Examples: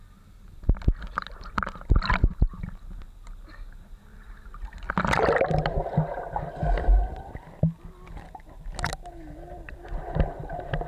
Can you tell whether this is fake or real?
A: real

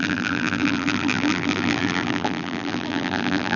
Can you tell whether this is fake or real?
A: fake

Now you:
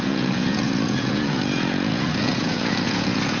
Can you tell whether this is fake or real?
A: fake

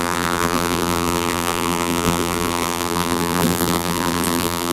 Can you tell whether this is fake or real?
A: fake